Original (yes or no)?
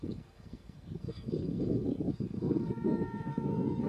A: no